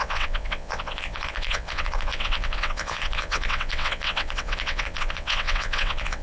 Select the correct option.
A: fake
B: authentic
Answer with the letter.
A